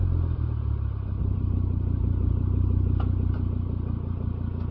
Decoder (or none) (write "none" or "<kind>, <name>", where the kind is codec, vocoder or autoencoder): none